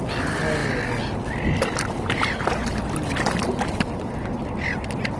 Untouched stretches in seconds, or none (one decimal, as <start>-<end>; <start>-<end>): 0.0-5.2